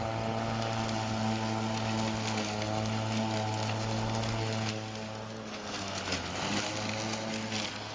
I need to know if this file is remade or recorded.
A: recorded